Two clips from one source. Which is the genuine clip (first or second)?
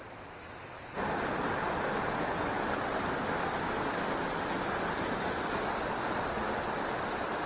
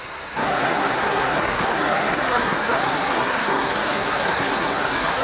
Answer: first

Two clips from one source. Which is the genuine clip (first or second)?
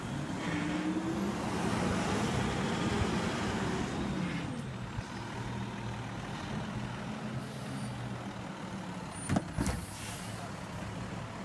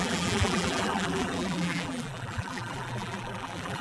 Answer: first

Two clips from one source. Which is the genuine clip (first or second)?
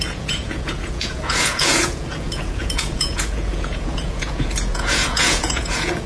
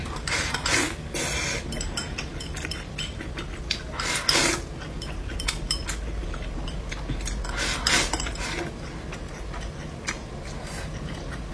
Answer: second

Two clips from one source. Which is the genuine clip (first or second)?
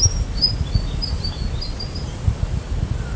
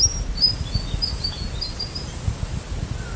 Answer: second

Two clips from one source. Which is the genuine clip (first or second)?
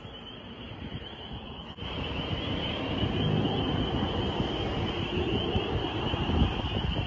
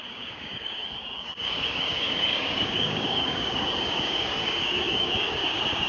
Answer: first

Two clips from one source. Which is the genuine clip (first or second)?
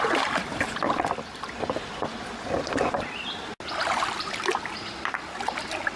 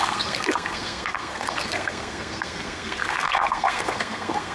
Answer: first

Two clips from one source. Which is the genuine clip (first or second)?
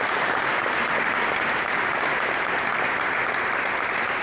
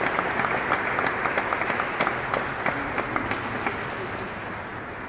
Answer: second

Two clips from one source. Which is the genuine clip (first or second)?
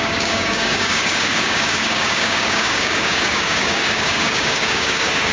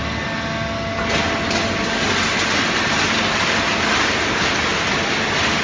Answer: second